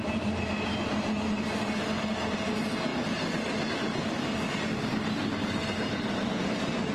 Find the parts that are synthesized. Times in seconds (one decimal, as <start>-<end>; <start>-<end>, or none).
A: none